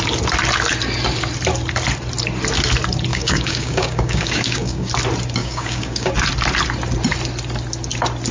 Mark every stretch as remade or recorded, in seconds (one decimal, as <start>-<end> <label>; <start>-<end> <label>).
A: 0.0-3.1 recorded; 3.1-4.9 remade; 4.9-5.4 recorded; 5.4-6.1 remade; 6.1-8.3 recorded

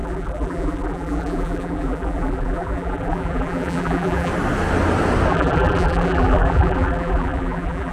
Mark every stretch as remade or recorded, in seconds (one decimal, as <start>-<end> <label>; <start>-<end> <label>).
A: 0.0-4.3 remade; 4.3-5.3 recorded; 5.3-7.9 remade